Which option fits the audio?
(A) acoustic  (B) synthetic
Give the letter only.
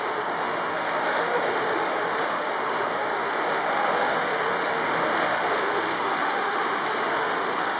B